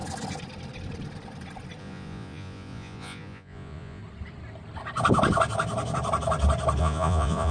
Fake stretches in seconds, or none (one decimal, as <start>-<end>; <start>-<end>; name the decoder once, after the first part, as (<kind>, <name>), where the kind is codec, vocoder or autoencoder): 1.8-4.0 (vocoder, Vocos); 6.8-7.5

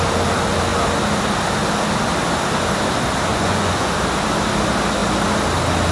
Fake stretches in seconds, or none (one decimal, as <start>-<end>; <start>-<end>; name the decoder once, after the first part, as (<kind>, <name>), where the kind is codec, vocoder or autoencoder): 3.3-3.9 (vocoder, Vocos)

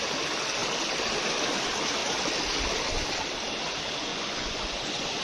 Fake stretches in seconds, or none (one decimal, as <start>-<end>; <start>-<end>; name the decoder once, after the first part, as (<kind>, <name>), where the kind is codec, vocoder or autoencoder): 4.1-5.2 (vocoder, Vocos)

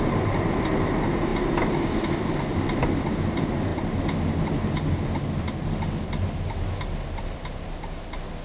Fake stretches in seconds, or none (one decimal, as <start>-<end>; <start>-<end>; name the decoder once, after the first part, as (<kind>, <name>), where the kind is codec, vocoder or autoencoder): none

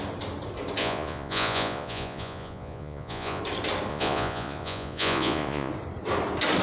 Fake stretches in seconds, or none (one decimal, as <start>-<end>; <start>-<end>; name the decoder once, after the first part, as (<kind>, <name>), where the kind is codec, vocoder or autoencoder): 0.8-3.4 (vocoder, Vocos); 3.9-5.7

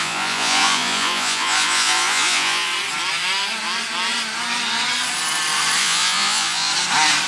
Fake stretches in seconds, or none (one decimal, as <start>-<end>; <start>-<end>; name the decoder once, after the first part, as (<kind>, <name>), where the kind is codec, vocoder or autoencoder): 0.0-2.7 (vocoder, Vocos); 5.8-6.7